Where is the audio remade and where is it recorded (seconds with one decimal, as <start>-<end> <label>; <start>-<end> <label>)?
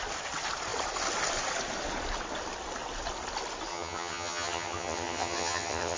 0.0-3.7 recorded; 3.7-6.0 remade